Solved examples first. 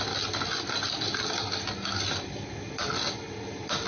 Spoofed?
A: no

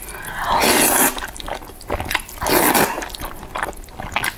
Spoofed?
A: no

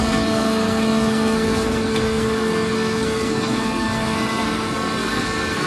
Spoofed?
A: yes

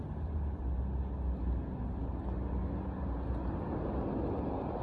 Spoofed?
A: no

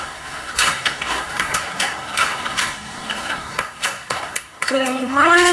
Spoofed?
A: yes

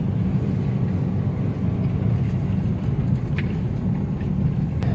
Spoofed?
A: no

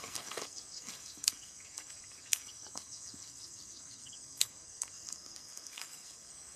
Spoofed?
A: yes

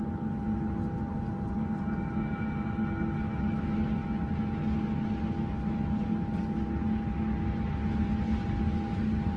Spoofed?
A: no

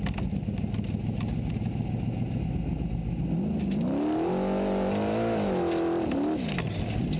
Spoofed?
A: no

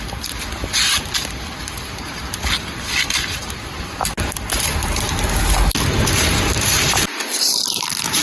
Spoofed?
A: no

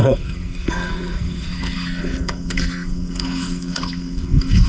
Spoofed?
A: yes